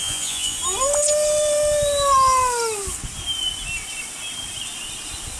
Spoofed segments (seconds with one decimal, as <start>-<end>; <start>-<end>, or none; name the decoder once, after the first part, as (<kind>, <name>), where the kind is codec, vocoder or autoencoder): 0.0-0.6 (vocoder, Vocos)